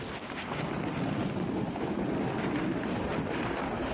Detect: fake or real real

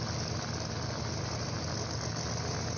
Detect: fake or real real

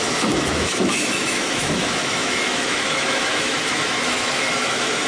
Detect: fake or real fake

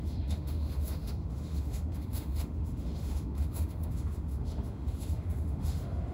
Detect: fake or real fake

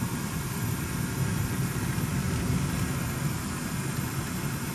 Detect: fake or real real